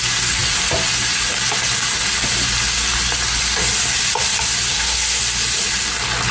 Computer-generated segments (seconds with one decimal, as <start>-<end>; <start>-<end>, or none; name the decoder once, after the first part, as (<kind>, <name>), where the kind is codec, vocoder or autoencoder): 4.7-5.2 (codec, SNAC)